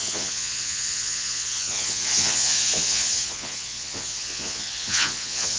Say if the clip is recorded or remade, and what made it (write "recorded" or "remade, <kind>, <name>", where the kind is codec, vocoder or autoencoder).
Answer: remade, vocoder, Vocos